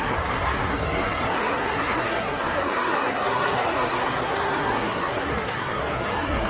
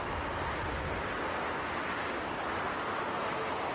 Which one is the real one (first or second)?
second